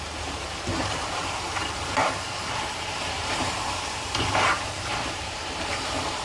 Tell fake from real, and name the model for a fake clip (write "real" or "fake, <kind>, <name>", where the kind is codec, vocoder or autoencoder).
fake, vocoder, BigVGAN v2